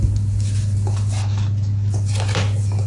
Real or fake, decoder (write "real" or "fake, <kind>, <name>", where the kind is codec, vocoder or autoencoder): real